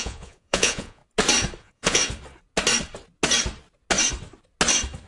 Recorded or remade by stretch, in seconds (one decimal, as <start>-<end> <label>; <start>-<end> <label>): 0.0-1.0 remade; 1.0-1.6 recorded; 1.6-2.0 remade; 2.0-5.1 recorded